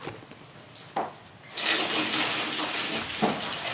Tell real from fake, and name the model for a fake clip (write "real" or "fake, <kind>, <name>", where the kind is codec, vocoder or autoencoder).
real